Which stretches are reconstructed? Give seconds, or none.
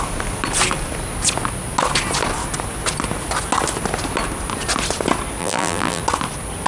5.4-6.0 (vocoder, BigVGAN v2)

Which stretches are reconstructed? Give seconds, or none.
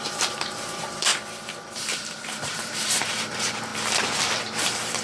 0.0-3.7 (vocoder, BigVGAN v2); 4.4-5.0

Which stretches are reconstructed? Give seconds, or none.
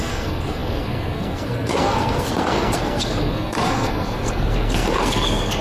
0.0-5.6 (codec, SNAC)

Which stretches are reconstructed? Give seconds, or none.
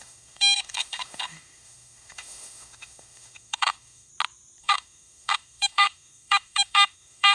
0.0-4.1 (autoencoder, DAC-VAE); 4.6-7.3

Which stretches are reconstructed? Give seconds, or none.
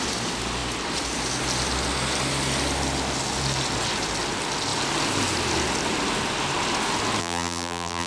7.2-8.1 (vocoder, BigVGAN v2)